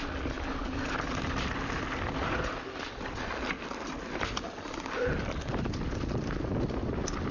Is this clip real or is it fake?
real